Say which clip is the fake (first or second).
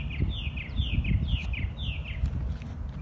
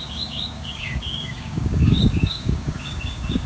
second